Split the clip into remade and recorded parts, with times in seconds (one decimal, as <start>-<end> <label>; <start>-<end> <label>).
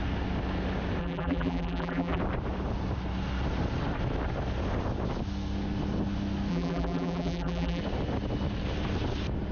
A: 0.0-1.0 recorded; 1.0-2.2 remade; 2.2-6.5 recorded; 6.5-7.8 remade; 7.8-9.5 recorded